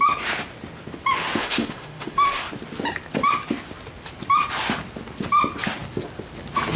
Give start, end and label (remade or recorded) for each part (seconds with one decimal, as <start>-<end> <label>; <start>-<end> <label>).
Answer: 0.0-1.4 recorded; 1.4-2.4 remade; 2.4-6.8 recorded